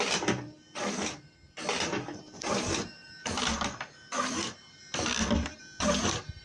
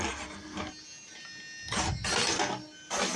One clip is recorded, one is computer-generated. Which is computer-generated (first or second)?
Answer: first